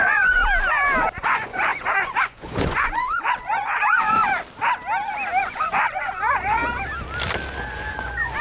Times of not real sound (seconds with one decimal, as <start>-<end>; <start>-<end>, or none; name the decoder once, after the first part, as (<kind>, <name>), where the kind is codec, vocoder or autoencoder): 0.0-0.4 (vocoder, Vocos); 1.1-4.2; 5.4-6.6; 7.6-8.4